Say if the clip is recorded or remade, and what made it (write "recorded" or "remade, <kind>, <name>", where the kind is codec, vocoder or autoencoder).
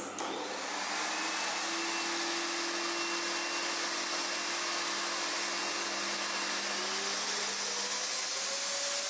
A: recorded